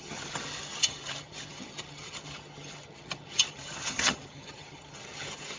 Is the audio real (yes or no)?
no